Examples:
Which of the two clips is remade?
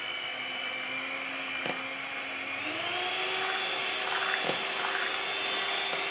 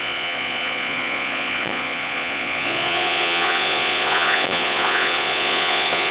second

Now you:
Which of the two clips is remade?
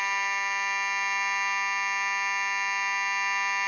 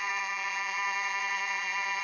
second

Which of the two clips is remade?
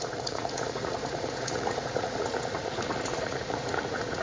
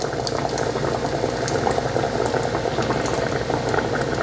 first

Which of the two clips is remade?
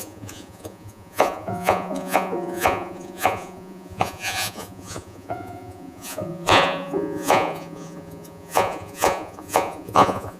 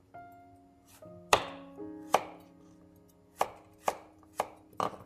first